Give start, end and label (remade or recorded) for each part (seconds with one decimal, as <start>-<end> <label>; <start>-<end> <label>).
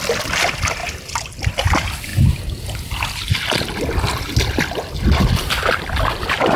0.0-0.8 remade; 0.8-1.4 recorded; 1.4-2.1 remade; 2.1-6.1 recorded; 6.1-6.6 remade